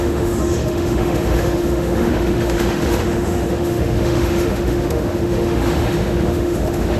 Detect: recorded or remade remade